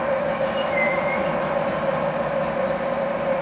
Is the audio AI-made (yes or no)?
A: no